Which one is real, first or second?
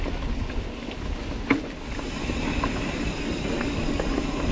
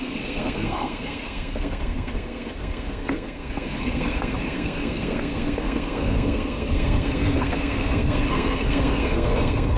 first